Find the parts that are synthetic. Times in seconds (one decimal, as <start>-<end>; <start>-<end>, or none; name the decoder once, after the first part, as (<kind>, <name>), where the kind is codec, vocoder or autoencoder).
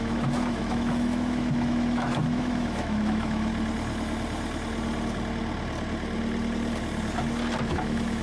0.0-3.5 (autoencoder, DAC-VAE); 7.7-8.2